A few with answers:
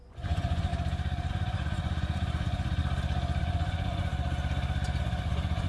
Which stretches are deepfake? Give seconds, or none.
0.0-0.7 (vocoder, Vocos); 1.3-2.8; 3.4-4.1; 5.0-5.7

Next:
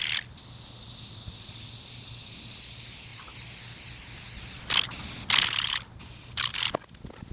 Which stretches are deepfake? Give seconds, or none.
none

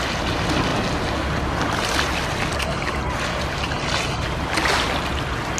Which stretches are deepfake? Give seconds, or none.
none